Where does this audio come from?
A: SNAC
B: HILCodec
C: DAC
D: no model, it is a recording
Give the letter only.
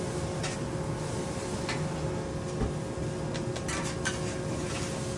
D